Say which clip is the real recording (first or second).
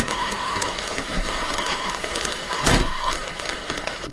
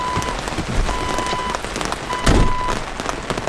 second